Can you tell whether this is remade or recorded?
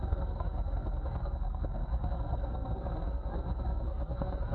remade